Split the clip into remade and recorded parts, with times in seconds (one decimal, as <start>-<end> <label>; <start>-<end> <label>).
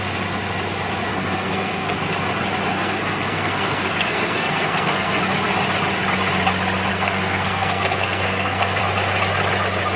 0.0-1.1 recorded; 1.1-2.0 remade; 2.0-2.7 recorded; 2.7-5.2 remade; 5.2-6.9 recorded; 6.9-8.8 remade; 8.8-10.0 recorded